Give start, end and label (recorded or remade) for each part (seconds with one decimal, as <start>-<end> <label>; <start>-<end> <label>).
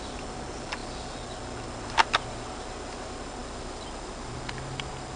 0.0-5.2 recorded